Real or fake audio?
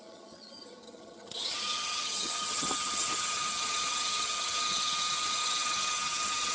fake